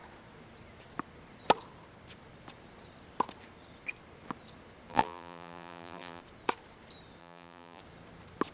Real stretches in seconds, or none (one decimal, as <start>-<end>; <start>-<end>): 0.0-4.9; 6.2-7.2; 7.8-8.5